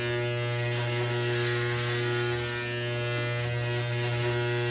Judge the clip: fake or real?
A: real